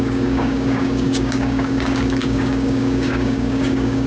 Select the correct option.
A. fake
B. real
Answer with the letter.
A